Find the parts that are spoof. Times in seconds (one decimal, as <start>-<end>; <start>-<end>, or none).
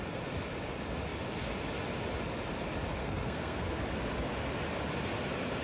3.0-3.8